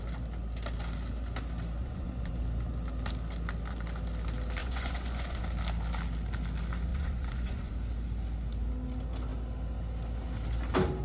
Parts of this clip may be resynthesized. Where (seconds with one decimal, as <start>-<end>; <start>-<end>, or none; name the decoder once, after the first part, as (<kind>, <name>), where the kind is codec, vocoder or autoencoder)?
1.8-2.3 (vocoder, Vocos); 4.6-5.4; 6.9-7.7